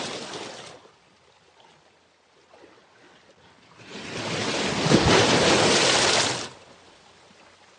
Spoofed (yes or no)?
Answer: no